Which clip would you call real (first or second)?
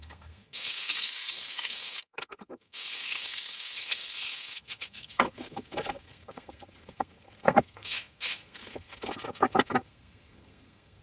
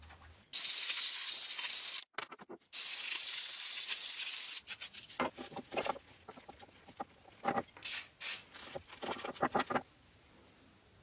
second